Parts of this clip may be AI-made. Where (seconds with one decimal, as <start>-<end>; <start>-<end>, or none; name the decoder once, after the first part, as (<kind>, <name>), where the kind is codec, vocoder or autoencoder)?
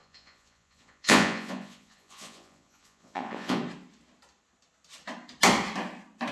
0.0-3.6 (vocoder, Vocos)